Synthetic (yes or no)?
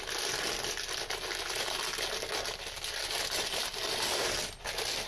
no